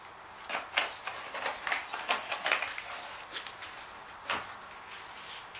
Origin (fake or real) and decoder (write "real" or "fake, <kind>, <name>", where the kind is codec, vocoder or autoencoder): real